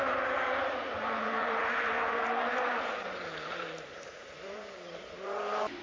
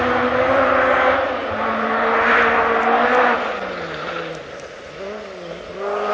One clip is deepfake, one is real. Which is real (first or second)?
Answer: second